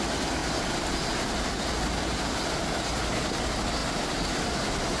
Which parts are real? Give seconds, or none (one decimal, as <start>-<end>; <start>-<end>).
0.0-5.0